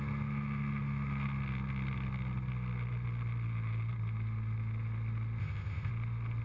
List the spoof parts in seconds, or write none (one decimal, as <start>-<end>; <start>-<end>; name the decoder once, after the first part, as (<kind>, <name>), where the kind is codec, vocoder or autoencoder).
5.4-5.9 (codec, ZipCodec)